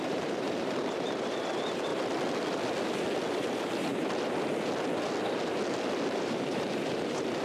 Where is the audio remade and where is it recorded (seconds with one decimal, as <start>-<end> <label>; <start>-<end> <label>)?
0.0-1.9 remade; 1.9-6.2 recorded; 6.2-7.4 remade